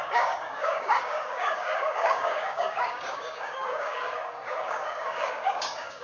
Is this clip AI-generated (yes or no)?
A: yes